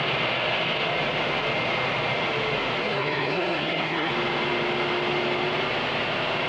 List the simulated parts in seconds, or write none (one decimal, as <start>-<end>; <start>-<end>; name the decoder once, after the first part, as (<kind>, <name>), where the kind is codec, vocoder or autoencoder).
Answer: 2.8-4.1 (codec, SNAC)